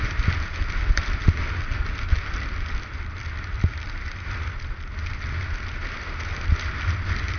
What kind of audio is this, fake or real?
real